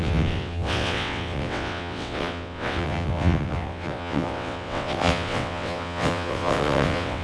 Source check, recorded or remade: remade